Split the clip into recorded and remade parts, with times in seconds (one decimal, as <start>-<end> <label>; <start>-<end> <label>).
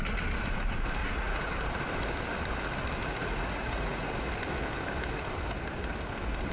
0.0-1.0 recorded; 1.0-1.5 remade; 1.5-3.0 recorded; 3.0-4.3 remade; 4.3-6.5 recorded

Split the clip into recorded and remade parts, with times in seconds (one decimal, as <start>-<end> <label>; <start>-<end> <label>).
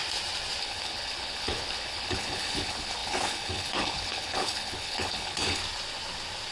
0.0-0.6 recorded; 0.6-5.6 remade; 5.6-6.5 recorded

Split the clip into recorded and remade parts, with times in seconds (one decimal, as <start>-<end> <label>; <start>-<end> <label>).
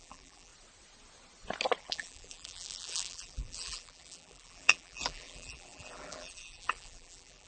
0.0-0.5 remade; 0.5-1.8 recorded; 1.8-7.5 remade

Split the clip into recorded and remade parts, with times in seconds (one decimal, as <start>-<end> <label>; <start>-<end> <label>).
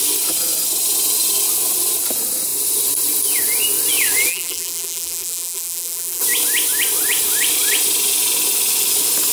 0.0-4.3 recorded; 4.3-6.2 remade; 6.2-9.3 recorded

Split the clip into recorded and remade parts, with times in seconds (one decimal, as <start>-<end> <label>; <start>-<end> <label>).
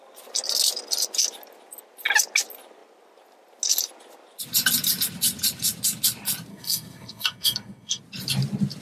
0.0-6.5 recorded; 6.5-8.0 remade; 8.0-8.8 recorded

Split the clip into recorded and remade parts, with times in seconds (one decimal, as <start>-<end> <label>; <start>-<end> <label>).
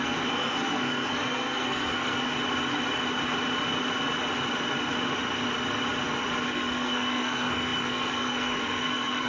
0.0-2.3 remade; 2.3-6.4 recorded; 6.4-9.3 remade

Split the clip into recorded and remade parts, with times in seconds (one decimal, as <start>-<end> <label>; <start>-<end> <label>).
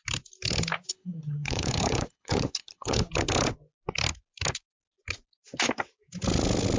0.0-0.9 recorded; 0.9-3.1 remade; 3.1-6.8 recorded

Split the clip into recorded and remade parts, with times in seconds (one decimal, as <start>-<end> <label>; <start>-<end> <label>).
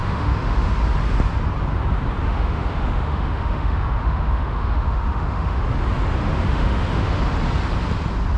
0.0-0.7 remade; 0.7-2.2 recorded; 2.2-5.6 remade; 5.6-6.2 recorded; 6.2-7.2 remade; 7.2-8.4 recorded